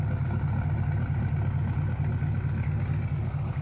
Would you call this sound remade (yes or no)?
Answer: no